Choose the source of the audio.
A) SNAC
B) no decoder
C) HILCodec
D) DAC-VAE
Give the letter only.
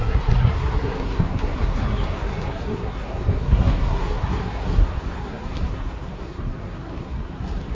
A